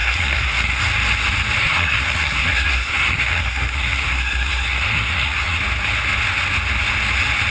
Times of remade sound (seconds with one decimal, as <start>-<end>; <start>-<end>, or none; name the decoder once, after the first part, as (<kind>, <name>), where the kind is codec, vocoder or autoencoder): 0.0-0.8 (codec, SNAC); 1.6-5.6